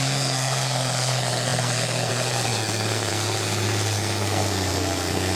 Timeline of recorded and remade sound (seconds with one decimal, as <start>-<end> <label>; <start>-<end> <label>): 0.0-5.3 remade